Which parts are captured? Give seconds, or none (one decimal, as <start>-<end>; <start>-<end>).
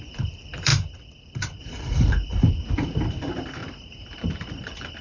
0.7-1.6; 2.3-3.1; 3.6-4.5